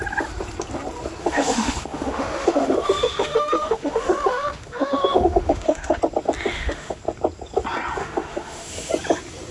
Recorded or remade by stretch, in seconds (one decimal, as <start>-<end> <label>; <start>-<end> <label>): 0.0-1.2 recorded; 1.2-6.0 remade; 6.0-6.5 recorded; 6.5-7.0 remade; 7.0-8.0 recorded; 8.0-8.9 remade; 8.9-9.5 recorded